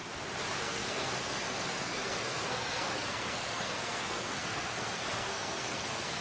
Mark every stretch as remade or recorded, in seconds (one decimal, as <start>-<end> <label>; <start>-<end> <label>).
0.0-0.6 recorded; 0.6-6.2 remade